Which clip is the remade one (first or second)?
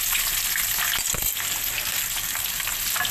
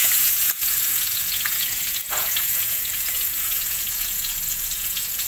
second